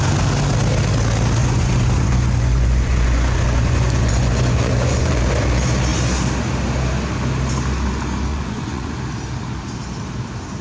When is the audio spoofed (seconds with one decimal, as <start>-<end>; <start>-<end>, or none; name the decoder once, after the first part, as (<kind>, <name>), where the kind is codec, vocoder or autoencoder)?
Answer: 1.4-5.2 (vocoder, Vocos); 8.3-9.0